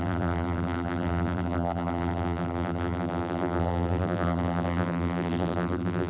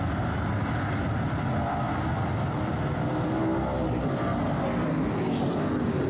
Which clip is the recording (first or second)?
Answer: second